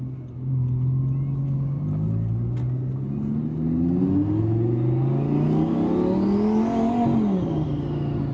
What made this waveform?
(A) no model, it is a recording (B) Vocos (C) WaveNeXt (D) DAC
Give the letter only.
A